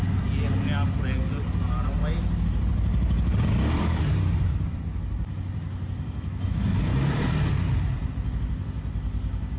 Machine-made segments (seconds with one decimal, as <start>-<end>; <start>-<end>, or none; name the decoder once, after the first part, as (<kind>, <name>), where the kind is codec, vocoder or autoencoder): none